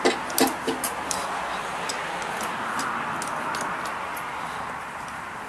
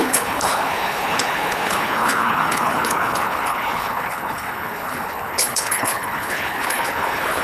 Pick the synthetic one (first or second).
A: second